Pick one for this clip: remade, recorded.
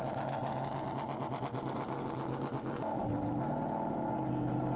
recorded